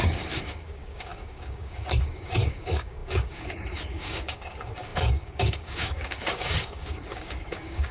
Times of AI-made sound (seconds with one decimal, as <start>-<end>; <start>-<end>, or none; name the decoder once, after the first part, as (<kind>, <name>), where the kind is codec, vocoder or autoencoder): 0.0-7.9 (codec, DAC)